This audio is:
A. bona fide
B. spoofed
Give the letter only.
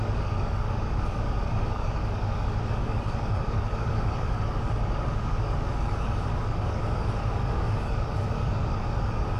B